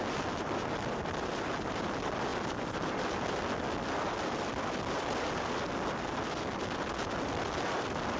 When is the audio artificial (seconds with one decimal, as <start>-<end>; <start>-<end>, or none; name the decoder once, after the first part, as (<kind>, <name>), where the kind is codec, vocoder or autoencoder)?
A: none